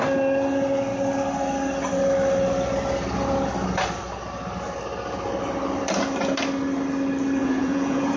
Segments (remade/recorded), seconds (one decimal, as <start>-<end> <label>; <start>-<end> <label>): 0.0-7.4 recorded; 7.4-8.2 remade